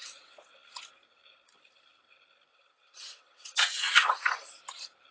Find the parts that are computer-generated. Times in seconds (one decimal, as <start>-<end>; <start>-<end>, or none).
2.5-4.5